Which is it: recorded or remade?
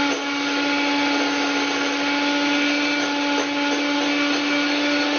recorded